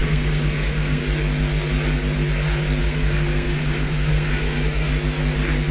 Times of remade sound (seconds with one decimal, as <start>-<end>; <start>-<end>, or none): 0.0-1.0; 2.8-4.9